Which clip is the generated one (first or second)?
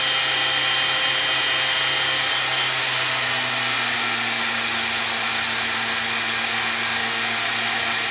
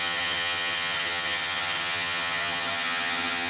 second